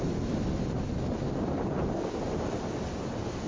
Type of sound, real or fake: real